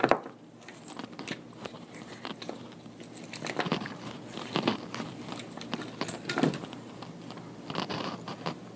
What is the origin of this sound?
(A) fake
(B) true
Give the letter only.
B